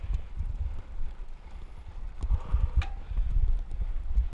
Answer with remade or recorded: recorded